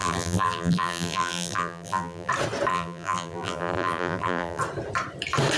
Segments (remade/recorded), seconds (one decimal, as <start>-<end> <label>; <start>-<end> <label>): 0.0-2.3 remade; 2.3-2.7 recorded; 2.7-4.6 remade; 4.6-5.6 recorded